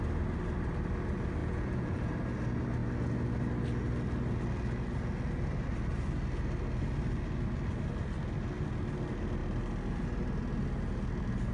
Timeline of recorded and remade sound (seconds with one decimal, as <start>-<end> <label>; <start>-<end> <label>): 0.0-1.4 recorded; 1.4-2.1 remade; 2.1-11.5 recorded